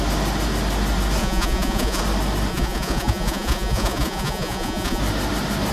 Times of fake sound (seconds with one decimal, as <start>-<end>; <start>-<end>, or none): 1.2-2.0; 2.5-5.0